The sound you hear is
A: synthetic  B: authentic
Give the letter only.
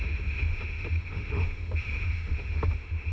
A